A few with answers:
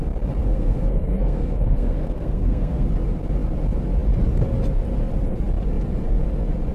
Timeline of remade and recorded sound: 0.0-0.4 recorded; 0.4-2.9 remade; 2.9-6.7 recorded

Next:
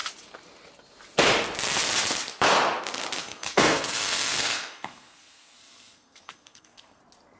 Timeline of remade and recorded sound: 0.0-3.2 recorded; 3.2-7.0 remade; 7.0-7.4 recorded

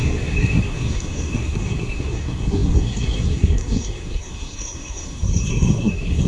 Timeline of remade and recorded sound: 0.0-6.3 remade

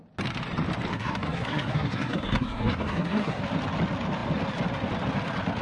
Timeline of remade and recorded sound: 0.0-0.9 recorded; 0.9-3.4 remade; 3.4-5.6 recorded

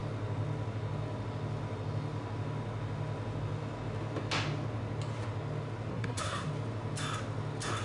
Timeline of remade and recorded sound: 0.0-5.9 recorded; 5.9-6.5 remade; 6.5-7.8 recorded